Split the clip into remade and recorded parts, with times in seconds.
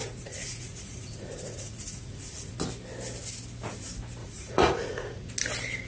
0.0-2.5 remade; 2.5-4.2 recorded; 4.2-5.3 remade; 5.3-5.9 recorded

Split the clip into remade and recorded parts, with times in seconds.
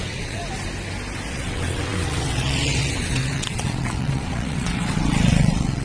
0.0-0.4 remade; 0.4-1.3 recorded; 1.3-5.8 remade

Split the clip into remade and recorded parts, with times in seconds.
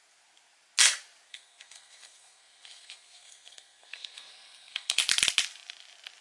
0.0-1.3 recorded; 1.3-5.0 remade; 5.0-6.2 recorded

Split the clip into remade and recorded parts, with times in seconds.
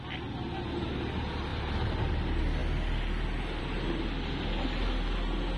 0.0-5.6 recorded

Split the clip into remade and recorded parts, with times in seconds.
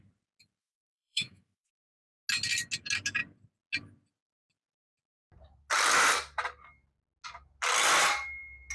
0.0-0.6 recorded; 0.6-1.7 remade; 1.7-8.7 recorded